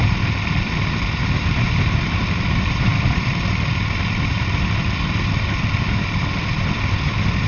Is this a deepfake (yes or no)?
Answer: yes